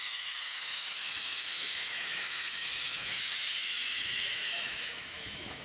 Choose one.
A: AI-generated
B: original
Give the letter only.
A